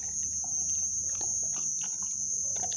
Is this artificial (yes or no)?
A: no